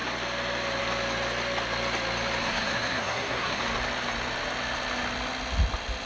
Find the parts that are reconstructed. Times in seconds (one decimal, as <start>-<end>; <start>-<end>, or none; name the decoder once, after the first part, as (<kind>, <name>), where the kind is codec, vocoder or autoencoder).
2.4-3.6 (codec, SNAC)